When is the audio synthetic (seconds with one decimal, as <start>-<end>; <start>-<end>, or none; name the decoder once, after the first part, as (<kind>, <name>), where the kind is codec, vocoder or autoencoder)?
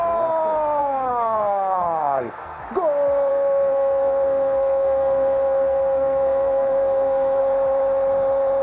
0.8-2.6 (codec, SNAC); 3.3-7.4